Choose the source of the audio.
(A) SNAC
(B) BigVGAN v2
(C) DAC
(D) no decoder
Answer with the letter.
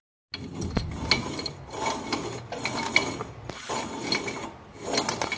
D